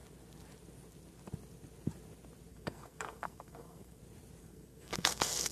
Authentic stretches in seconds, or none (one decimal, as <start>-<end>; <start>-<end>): 0.0-2.5; 4.0-4.4